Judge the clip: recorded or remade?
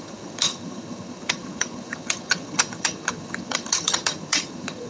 remade